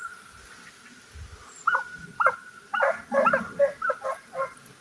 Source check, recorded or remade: recorded